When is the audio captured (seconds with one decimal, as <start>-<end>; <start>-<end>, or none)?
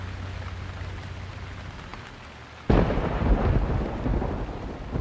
0.0-5.0